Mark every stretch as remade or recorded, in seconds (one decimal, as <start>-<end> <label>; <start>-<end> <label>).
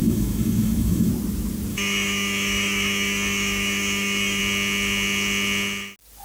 0.0-1.1 remade; 1.1-1.7 recorded; 1.7-4.4 remade; 4.4-6.2 recorded